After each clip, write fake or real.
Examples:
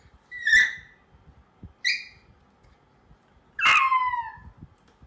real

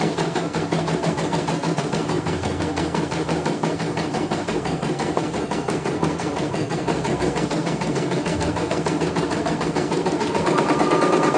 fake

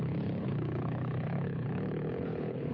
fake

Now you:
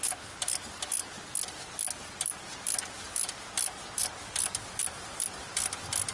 real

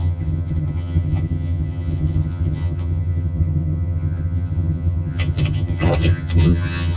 fake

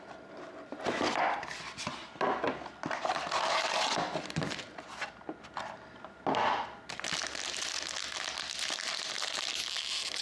real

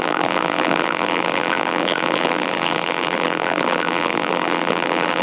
fake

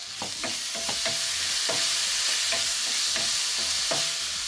real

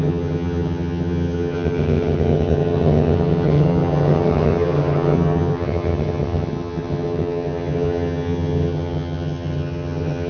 fake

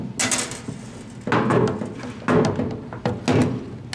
real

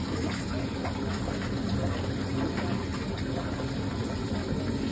real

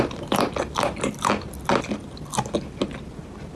real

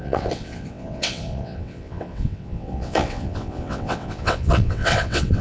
fake